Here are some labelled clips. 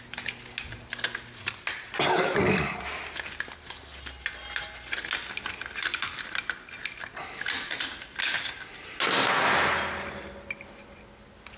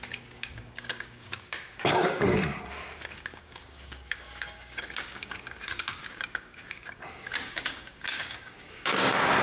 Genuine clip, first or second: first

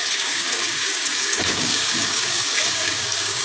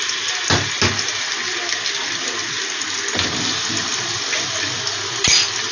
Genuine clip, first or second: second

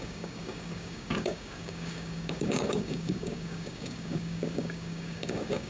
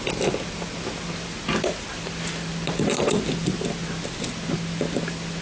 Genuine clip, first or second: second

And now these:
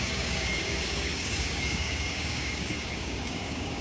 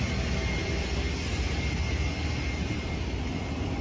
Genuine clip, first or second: second